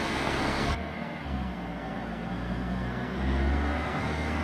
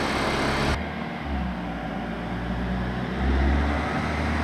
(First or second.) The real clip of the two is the second